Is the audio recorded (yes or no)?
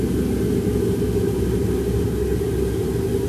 yes